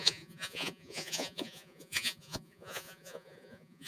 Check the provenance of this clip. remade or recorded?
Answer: remade